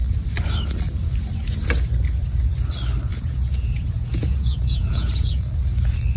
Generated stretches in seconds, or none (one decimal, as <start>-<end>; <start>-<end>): 3.1-5.5